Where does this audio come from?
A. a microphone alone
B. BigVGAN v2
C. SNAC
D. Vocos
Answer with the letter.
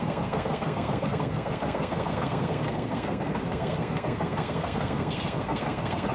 C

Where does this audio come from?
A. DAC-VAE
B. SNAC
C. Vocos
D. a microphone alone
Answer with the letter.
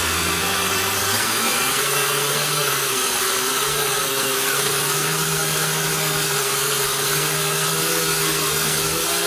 B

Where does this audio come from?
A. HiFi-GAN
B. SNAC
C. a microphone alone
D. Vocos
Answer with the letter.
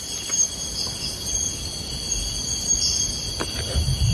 C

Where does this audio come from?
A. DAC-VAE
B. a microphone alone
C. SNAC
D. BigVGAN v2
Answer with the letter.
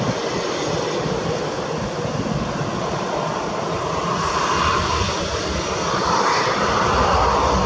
B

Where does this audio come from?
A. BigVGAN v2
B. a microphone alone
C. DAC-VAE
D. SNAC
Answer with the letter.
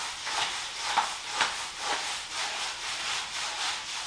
B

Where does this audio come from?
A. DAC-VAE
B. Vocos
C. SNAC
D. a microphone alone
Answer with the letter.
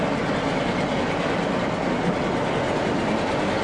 D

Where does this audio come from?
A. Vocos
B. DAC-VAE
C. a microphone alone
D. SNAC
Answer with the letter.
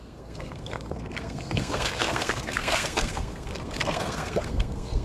D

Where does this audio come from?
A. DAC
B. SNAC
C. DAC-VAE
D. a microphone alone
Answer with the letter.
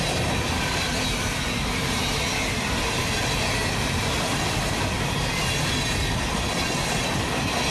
D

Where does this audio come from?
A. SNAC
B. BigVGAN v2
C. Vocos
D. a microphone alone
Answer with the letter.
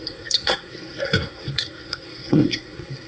A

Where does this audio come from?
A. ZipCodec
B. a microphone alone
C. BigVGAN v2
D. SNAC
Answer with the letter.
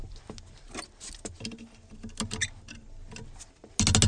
B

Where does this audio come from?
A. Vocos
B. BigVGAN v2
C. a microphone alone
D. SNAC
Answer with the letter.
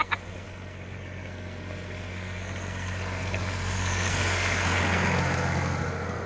D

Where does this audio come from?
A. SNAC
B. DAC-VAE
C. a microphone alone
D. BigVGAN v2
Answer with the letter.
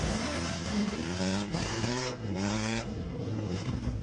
A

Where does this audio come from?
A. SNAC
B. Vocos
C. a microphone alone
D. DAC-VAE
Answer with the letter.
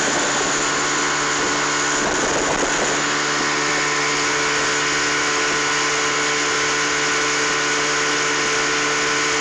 C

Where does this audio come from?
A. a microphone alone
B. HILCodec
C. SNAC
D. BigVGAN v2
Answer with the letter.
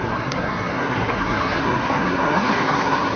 C